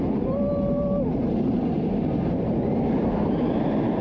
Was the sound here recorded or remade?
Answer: remade